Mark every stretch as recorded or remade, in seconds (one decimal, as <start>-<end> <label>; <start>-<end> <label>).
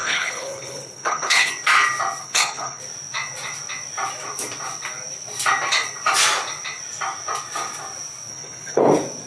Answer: 0.0-1.5 remade; 1.5-2.2 recorded; 2.2-2.8 remade; 2.8-8.3 recorded; 8.3-8.8 remade; 8.8-9.3 recorded